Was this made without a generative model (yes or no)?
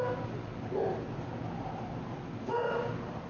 yes